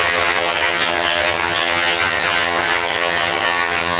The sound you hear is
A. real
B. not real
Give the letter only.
B